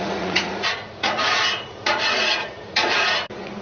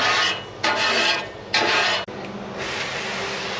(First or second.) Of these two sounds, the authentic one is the second